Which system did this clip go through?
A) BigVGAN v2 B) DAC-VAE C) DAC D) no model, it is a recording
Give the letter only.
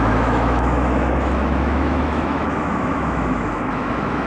B